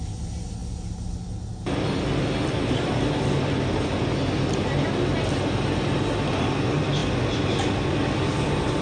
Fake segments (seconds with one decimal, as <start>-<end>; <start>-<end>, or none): none